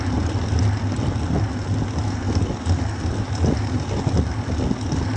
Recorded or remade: recorded